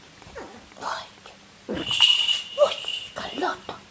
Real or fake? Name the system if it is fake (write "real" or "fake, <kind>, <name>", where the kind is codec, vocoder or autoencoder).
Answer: fake, vocoder, BigVGAN v2